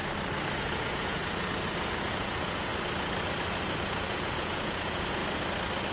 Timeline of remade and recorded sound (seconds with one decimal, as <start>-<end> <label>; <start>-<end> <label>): 0.0-0.6 recorded; 0.6-1.2 remade; 1.2-2.1 recorded; 2.1-2.7 remade; 2.7-3.8 recorded; 3.8-5.2 remade; 5.2-5.9 recorded